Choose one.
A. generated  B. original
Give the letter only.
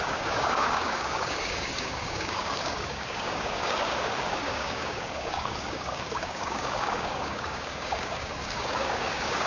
A